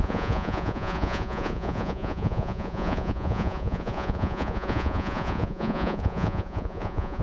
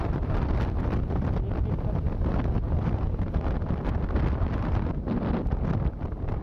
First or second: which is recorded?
second